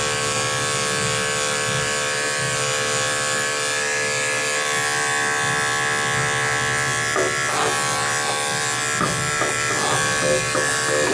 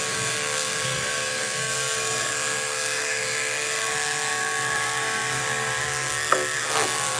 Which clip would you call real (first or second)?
first